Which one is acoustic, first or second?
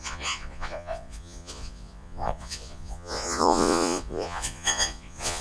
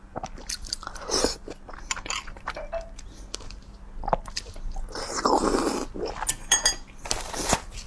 second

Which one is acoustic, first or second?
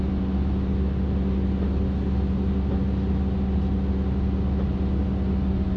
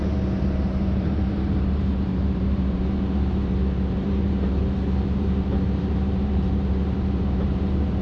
first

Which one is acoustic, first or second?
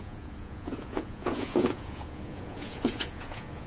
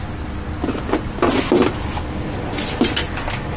second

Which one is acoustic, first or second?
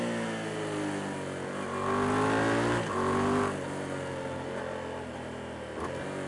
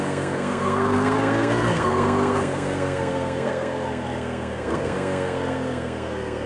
first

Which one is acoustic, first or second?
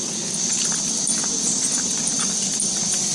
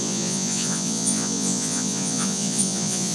first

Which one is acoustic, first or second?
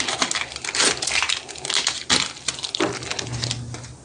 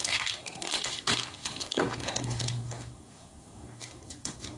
first